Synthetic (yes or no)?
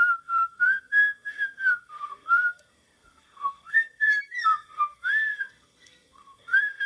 yes